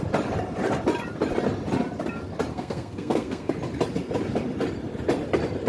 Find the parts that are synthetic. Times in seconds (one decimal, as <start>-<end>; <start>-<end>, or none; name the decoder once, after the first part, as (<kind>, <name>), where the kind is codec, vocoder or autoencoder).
2.5-3.5 (codec, SNAC)